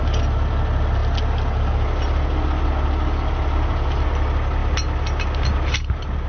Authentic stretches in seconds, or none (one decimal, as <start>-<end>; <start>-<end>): 0.0-6.3